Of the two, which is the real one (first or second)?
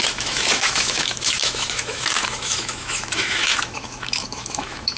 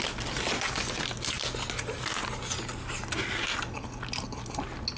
second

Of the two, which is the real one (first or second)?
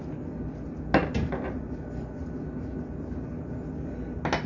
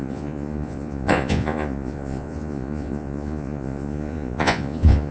first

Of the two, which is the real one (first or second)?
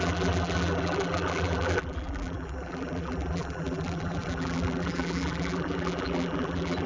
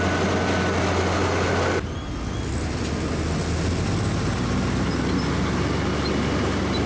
second